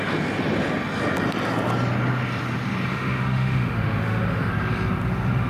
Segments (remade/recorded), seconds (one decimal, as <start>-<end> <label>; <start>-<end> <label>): 0.0-2.9 recorded; 2.9-4.5 remade; 4.5-5.5 recorded